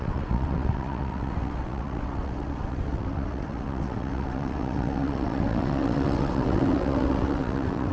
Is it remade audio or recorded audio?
remade